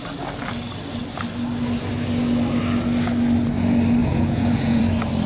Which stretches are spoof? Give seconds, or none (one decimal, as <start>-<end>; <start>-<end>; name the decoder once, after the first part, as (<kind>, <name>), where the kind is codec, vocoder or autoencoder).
4.0-4.8 (vocoder, Vocos)